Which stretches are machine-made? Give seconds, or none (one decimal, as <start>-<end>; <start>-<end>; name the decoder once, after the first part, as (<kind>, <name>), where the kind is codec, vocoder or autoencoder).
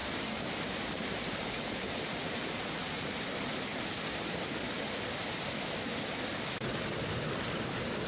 0.0-3.2 (vocoder, BigVGAN v2)